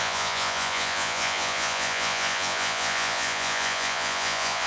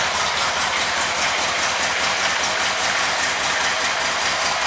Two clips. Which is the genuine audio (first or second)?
second